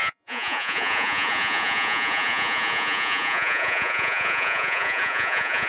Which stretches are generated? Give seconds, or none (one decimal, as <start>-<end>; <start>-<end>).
0.0-5.7